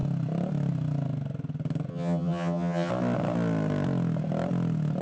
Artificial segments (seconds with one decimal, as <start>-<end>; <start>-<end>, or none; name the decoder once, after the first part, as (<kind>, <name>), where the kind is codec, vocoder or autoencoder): 1.9-2.9 (vocoder, HiFi-GAN)